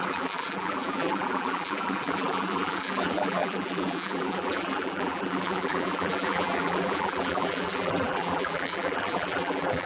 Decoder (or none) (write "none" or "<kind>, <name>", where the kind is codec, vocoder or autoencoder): vocoder, BigVGAN v2